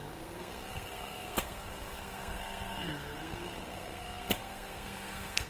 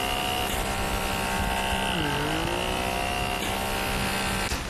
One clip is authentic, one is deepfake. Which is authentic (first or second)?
second